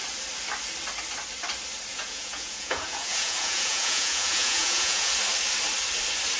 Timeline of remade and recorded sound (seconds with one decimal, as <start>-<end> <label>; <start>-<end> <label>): 0.0-1.9 recorded; 1.9-5.1 remade; 5.1-6.4 recorded